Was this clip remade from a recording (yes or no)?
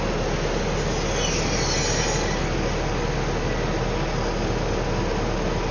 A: no